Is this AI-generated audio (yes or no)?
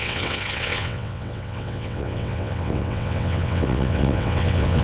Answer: yes